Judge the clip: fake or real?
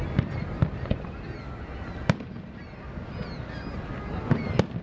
real